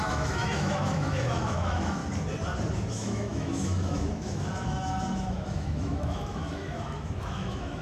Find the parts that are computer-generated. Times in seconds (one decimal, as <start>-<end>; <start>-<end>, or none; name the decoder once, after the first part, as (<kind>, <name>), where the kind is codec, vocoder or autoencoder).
0.0-2.0 (autoencoder, DAC-VAE); 2.9-7.8